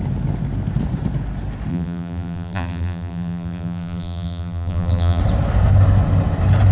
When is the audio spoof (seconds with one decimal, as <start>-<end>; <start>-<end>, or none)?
1.7-5.2